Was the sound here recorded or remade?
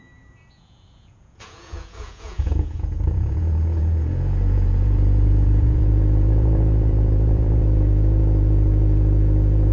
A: remade